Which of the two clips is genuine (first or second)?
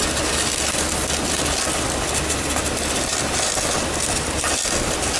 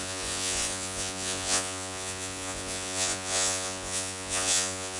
first